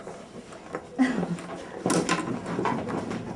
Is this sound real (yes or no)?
yes